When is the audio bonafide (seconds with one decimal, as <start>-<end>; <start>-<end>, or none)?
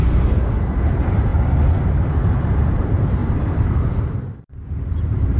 none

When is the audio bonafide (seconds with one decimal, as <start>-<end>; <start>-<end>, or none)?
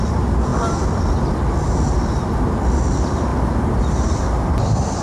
0.0-5.0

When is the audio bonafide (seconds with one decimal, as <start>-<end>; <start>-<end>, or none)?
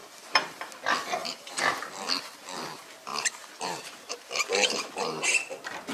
0.7-1.2; 1.9-3.1; 4.9-5.9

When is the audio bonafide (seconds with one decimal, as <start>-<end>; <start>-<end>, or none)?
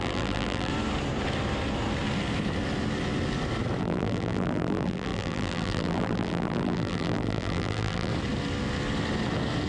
0.7-3.8; 8.1-9.7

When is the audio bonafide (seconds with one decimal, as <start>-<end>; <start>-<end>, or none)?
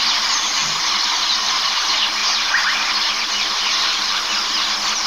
0.0-0.6; 1.7-5.1